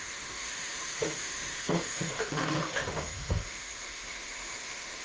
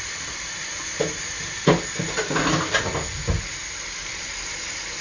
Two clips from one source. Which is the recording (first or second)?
second